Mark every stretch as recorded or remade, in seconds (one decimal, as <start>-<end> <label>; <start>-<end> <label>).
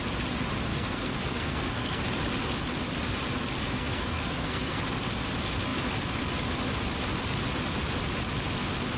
0.0-0.7 recorded; 0.7-2.0 remade; 2.0-3.6 recorded; 3.6-4.8 remade; 4.8-9.0 recorded